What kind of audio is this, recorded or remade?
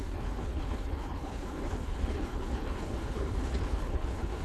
remade